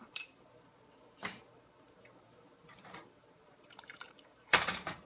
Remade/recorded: remade